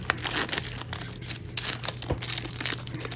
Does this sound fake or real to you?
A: real